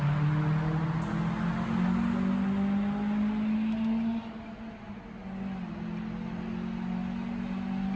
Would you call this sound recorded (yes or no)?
yes